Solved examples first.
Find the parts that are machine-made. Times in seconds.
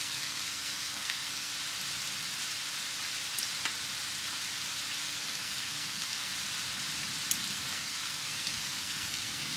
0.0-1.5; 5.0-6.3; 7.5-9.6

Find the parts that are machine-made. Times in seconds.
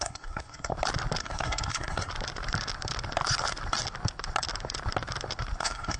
0.0-0.7; 1.2-2.1; 5.6-6.0